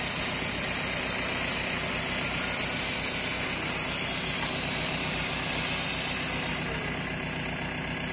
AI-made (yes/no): no